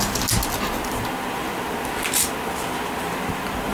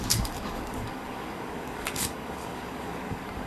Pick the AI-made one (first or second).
second